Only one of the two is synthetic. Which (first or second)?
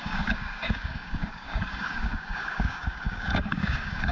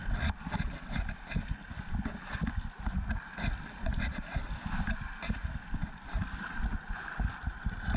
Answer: first